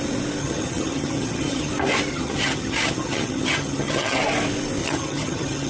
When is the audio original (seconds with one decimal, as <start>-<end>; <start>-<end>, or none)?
0.0-0.4; 1.7-2.1; 4.2-4.8